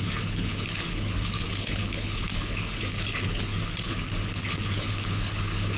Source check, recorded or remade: remade